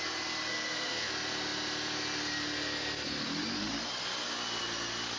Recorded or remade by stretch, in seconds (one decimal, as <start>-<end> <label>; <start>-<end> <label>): 0.0-0.5 recorded; 0.5-1.1 remade; 1.1-5.2 recorded